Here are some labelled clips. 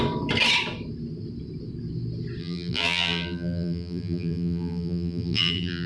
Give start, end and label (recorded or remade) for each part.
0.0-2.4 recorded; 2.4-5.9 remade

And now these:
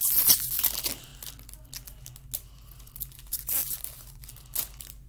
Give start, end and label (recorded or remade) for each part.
0.0-3.3 recorded; 3.3-4.2 remade; 4.2-5.1 recorded

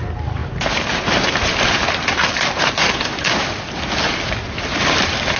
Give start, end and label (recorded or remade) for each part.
0.0-0.4 recorded; 0.4-3.6 remade; 3.6-5.4 recorded

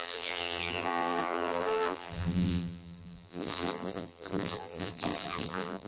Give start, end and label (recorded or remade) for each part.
0.0-5.9 remade

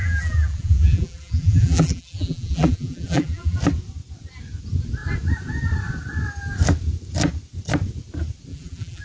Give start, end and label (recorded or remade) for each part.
0.0-3.6 remade; 3.6-8.5 recorded; 8.5-9.0 remade

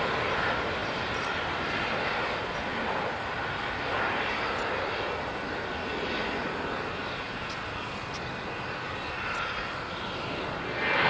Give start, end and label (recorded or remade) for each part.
0.0-0.8 recorded; 0.8-1.4 remade; 1.4-11.1 recorded